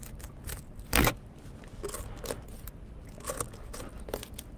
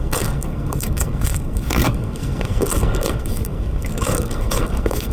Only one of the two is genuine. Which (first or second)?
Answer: first